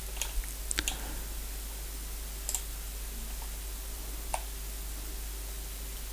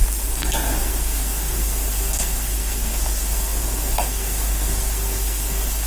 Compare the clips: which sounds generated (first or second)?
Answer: second